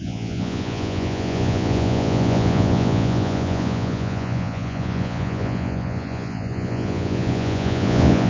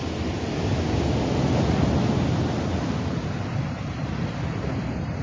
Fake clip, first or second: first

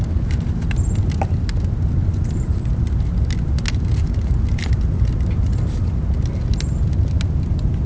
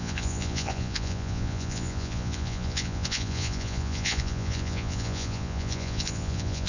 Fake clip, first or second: second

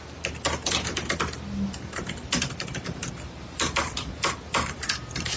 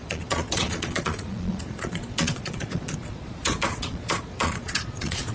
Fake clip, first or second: second